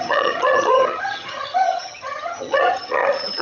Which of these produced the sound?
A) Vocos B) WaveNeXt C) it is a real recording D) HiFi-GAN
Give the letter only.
D